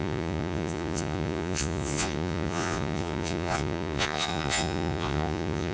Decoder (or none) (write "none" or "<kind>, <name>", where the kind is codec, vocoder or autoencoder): vocoder, Vocos